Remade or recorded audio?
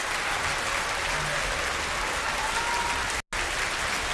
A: recorded